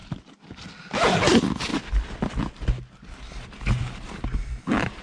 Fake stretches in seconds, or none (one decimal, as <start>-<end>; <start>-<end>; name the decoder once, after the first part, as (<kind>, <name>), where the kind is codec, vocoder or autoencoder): 0.0-1.2 (vocoder, BigVGAN v2)